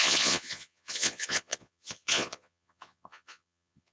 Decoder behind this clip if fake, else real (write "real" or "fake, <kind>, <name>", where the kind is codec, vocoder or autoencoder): fake, vocoder, Vocos